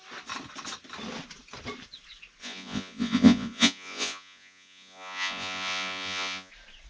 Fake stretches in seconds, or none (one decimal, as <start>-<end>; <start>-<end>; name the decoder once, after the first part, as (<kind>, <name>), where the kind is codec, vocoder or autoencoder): 2.4-6.5 (vocoder, Vocos)